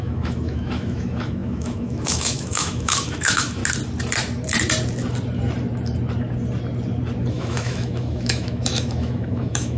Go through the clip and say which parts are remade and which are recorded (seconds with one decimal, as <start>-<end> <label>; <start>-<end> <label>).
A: 0.0-3.6 remade; 3.6-7.3 recorded; 7.3-9.8 remade